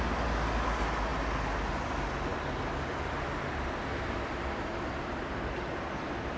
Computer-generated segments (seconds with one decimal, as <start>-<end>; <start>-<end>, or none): none